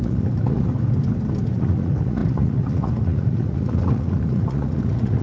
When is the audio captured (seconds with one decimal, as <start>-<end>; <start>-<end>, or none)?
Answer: 0.7-1.5